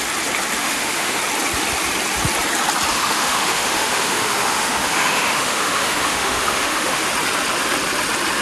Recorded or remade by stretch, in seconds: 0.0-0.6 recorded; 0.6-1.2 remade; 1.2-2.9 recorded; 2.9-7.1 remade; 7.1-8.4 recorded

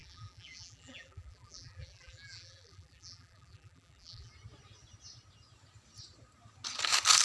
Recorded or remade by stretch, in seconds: 0.0-4.3 remade; 4.3-7.2 recorded